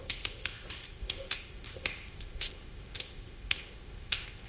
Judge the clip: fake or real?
fake